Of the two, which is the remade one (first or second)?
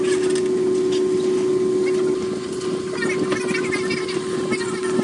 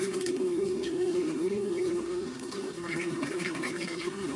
second